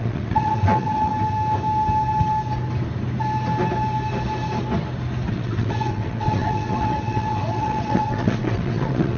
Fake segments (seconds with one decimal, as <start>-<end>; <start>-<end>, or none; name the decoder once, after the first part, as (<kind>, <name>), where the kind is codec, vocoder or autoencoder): 0.0-1.1 (vocoder, WaveNeXt); 5.3-9.2